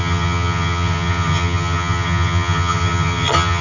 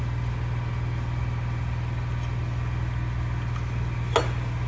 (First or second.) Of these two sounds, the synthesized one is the first